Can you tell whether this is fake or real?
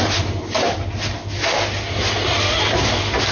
real